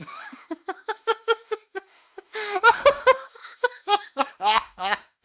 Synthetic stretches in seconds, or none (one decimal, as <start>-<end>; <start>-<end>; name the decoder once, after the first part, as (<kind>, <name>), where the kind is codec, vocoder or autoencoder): 0.0-5.2 (autoencoder, DAC-VAE)